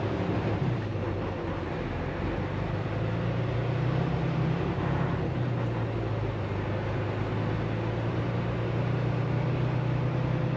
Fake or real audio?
real